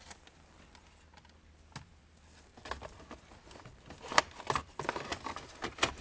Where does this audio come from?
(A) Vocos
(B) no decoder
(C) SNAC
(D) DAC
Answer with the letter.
B